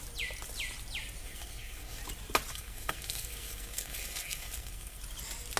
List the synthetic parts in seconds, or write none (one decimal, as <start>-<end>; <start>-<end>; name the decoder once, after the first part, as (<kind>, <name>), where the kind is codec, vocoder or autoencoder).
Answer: 1.2-2.0 (codec, SNAC); 2.5-5.0